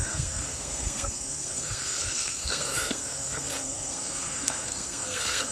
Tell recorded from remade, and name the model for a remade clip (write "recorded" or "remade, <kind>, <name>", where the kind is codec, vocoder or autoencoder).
remade, codec, SNAC